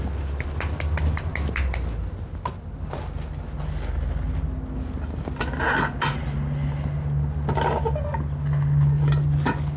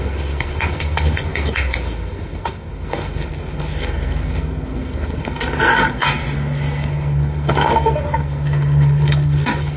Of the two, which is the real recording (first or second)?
first